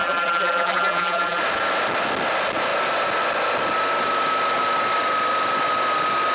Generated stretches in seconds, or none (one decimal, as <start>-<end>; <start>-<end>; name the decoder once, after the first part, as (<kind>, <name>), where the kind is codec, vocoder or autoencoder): 0.0-1.4 (vocoder, BigVGAN v2)